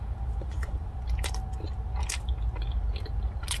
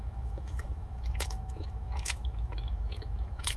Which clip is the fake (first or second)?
second